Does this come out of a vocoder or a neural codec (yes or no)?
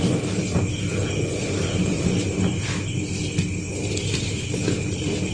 no